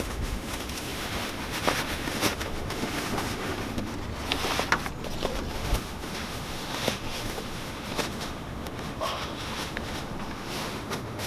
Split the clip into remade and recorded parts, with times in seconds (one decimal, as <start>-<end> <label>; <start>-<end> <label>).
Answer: 0.0-3.9 remade; 3.9-5.5 recorded; 5.5-11.3 remade